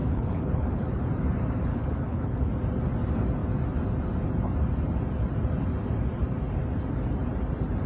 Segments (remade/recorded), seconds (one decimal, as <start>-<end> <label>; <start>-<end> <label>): 0.0-1.0 remade; 1.0-1.7 recorded; 1.7-2.5 remade; 2.5-7.9 recorded